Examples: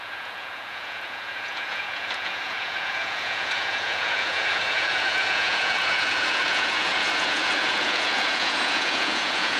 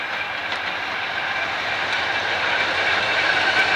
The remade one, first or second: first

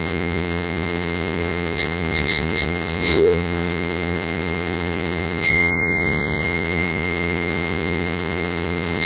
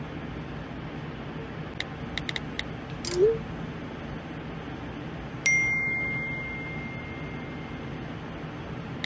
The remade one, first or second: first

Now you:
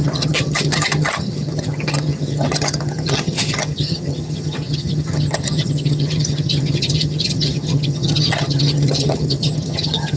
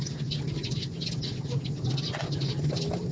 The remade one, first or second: first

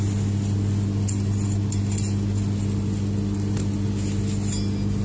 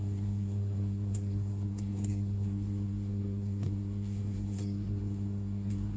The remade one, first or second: second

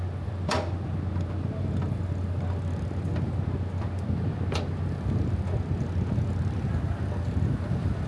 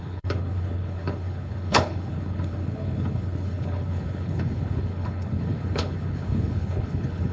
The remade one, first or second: second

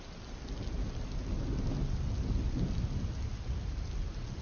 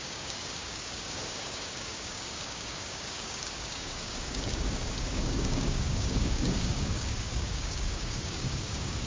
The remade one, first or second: second